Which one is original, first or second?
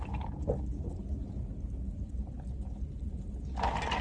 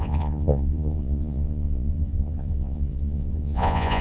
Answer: first